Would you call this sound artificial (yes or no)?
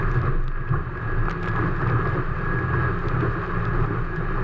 no